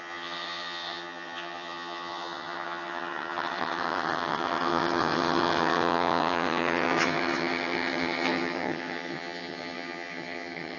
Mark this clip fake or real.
fake